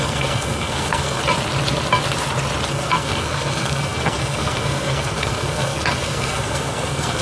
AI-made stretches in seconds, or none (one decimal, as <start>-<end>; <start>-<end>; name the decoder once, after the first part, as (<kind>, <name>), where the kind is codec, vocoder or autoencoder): 0.0-1.2 (codec, SNAC); 2.7-7.2